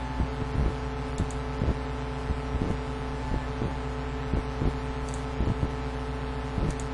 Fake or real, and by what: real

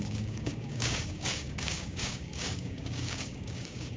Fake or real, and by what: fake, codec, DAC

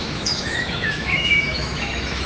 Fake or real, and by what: fake, autoencoder, DAC-VAE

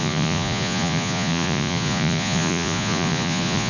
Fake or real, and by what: fake, vocoder, Vocos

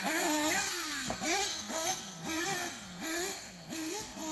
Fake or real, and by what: fake, codec, SNAC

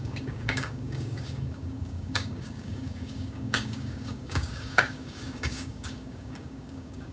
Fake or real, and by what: fake, codec, DAC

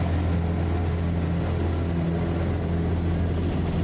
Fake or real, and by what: real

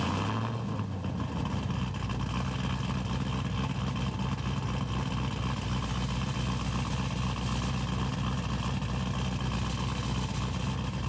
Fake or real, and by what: real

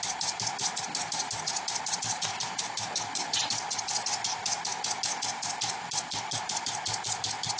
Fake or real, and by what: real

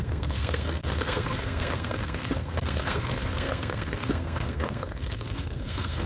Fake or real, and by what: fake, codec, SNAC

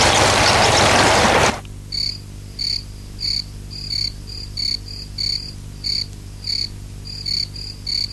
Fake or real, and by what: real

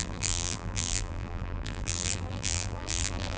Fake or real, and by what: fake, vocoder, BigVGAN v2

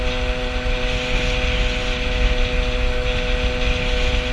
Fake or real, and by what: real